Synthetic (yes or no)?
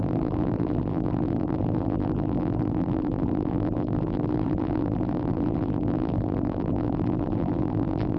yes